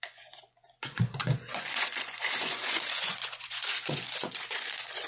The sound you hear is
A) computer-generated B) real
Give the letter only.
A